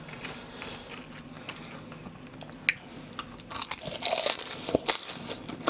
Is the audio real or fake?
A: real